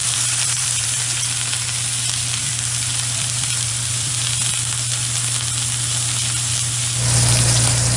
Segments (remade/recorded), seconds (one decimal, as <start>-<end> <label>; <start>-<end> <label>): 0.0-1.0 remade; 1.0-2.4 recorded; 2.4-4.5 remade; 4.5-8.0 recorded